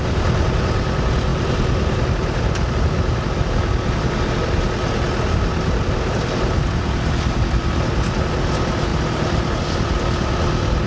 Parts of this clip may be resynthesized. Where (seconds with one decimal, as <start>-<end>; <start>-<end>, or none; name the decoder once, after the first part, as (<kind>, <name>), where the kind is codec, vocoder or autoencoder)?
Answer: none